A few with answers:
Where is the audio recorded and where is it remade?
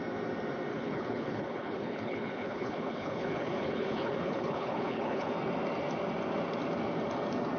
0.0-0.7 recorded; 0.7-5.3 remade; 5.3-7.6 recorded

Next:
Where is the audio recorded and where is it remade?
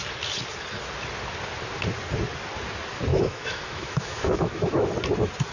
0.0-3.1 recorded; 3.1-4.9 remade; 4.9-5.5 recorded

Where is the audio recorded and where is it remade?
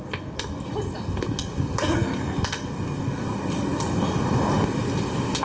0.0-5.4 recorded